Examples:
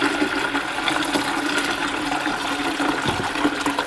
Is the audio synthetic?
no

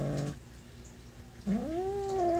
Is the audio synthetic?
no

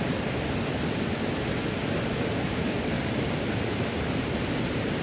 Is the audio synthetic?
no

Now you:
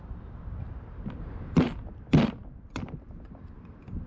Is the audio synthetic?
yes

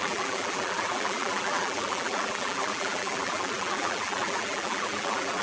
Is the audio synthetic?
yes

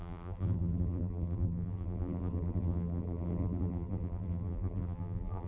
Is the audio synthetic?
yes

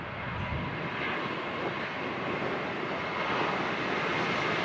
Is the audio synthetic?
no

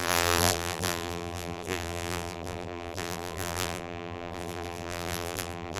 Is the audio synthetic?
yes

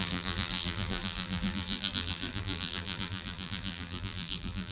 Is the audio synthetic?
yes